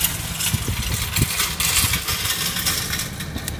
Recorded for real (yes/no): yes